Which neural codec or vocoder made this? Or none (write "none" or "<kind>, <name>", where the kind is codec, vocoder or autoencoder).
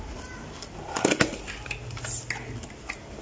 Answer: none